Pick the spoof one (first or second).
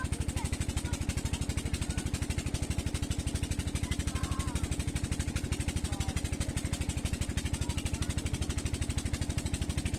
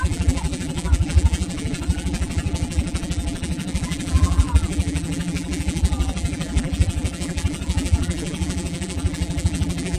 second